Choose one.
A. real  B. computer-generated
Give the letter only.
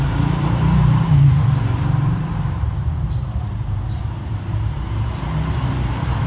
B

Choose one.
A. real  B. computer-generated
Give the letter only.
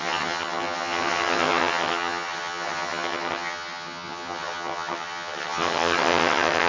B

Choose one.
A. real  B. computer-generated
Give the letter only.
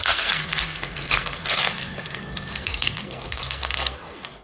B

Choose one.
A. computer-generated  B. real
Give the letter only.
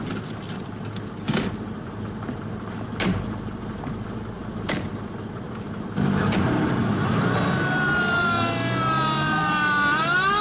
B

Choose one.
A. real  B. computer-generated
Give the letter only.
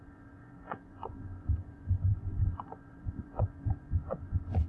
B